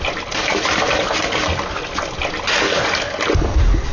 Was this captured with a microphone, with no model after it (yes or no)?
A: yes